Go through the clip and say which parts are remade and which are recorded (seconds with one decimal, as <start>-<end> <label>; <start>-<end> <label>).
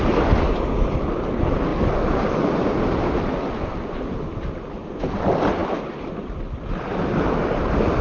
0.0-8.0 recorded